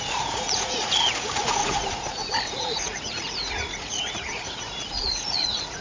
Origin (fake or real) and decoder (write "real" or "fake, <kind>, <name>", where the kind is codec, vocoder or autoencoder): fake, vocoder, Vocos